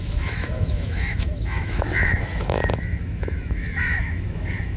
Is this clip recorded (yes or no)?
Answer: no